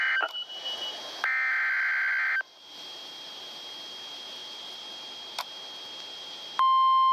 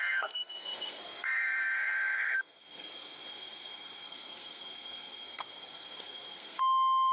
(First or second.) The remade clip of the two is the second